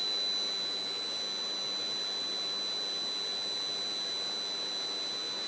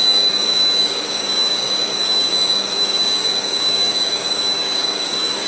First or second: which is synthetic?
second